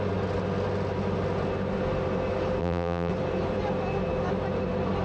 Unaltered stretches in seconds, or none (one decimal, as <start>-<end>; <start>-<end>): 0.0-2.6; 3.1-5.0